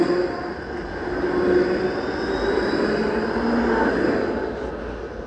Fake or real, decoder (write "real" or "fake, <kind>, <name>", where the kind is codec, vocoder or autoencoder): real